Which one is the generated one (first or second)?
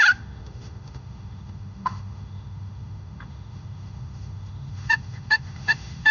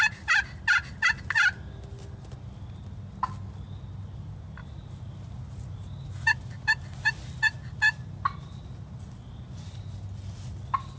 first